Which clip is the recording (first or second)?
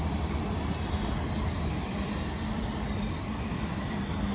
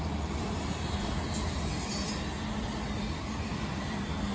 second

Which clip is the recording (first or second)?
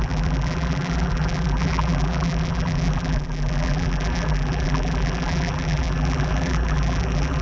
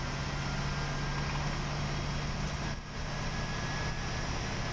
second